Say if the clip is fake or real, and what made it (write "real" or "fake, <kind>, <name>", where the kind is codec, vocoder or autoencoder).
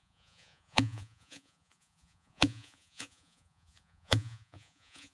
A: fake, vocoder, Vocos